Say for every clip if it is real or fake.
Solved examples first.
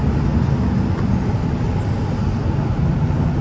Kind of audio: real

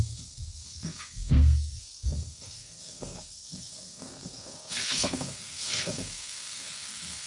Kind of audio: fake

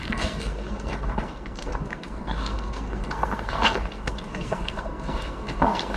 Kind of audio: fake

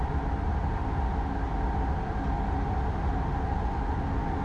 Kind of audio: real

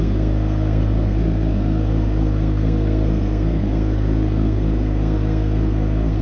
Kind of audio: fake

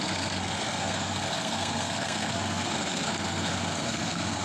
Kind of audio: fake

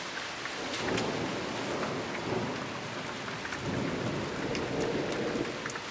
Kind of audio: real